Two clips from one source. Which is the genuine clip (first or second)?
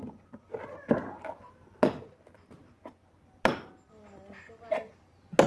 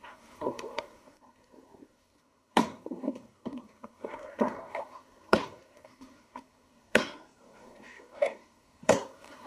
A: first